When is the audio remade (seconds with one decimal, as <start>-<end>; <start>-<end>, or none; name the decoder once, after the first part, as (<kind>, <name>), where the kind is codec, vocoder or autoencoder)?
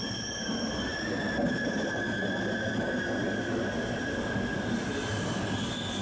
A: none